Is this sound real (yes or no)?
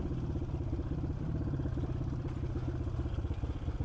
yes